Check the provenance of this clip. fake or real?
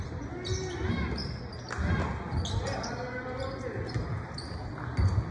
real